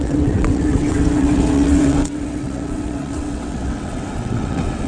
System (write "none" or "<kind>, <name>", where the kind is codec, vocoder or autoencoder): vocoder, WaveNeXt